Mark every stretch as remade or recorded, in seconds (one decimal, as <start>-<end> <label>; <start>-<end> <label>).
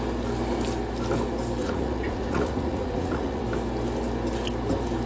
0.0-1.6 recorded; 1.6-3.4 remade; 3.4-5.1 recorded